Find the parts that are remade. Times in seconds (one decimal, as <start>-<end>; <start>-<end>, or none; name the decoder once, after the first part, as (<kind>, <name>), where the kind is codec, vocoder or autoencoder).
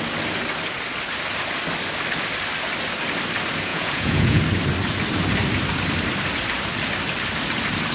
3.7-4.4 (vocoder, Vocos)